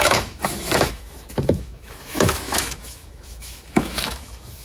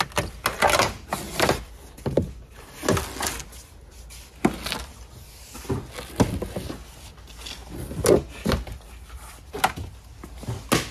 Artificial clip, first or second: first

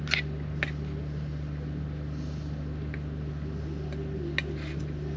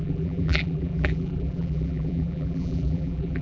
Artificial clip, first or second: second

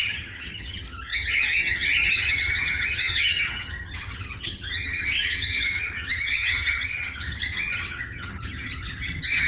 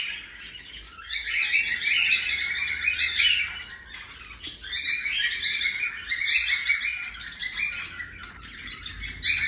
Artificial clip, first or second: first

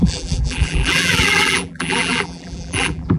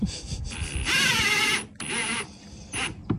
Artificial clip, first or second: first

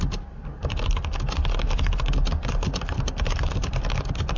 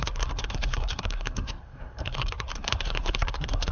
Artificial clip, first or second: second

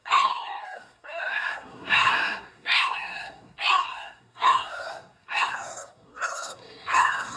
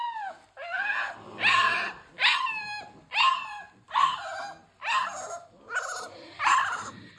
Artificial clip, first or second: first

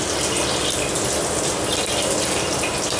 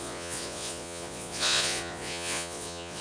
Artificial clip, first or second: second